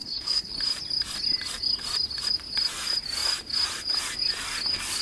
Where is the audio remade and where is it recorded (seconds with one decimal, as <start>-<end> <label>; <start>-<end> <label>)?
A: 0.0-0.5 remade; 0.5-5.0 recorded